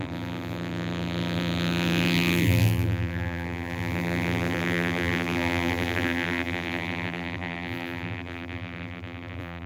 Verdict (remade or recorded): remade